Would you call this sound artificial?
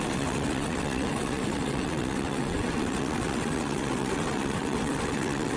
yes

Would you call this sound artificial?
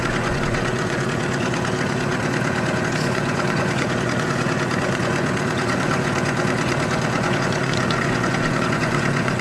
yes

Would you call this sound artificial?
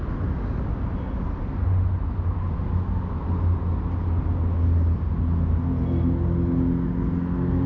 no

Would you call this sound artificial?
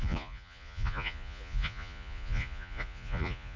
yes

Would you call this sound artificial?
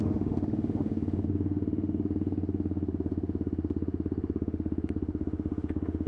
yes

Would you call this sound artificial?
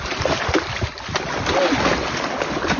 no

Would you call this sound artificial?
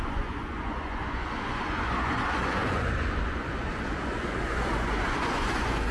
yes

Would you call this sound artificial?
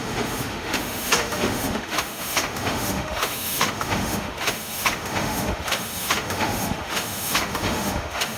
yes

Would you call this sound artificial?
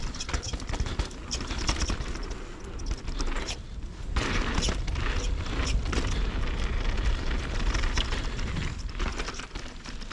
no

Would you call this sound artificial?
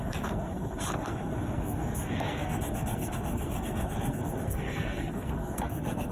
yes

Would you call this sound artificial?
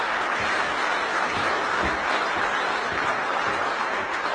no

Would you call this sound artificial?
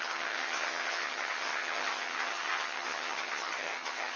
yes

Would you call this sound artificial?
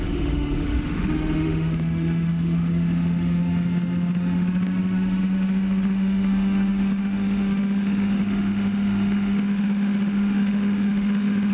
yes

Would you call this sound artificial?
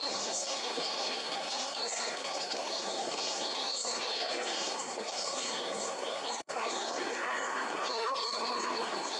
yes